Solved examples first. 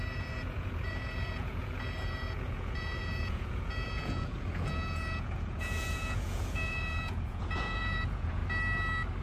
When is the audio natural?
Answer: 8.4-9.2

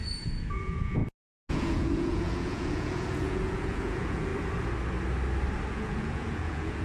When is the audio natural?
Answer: 1.0-1.5; 4.3-5.7

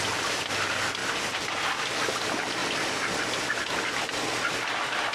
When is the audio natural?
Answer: 0.0-5.1